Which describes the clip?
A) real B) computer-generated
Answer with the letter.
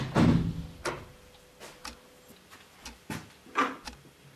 A